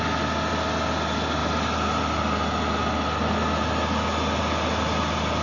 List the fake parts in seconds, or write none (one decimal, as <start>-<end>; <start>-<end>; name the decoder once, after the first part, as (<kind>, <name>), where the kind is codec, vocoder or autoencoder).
none